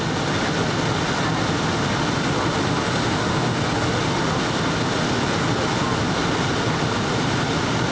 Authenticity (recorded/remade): recorded